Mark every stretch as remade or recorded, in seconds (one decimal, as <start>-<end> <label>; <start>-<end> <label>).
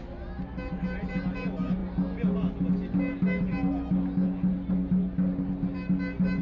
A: 0.0-6.4 recorded